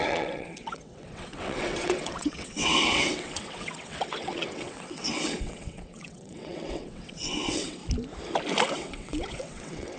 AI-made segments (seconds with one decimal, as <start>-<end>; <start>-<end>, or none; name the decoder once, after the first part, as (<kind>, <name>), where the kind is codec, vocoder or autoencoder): 0.0-7.8 (vocoder, WaveNeXt); 8.7-10.0